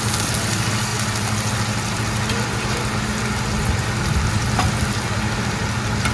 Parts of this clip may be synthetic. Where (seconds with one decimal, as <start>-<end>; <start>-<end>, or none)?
none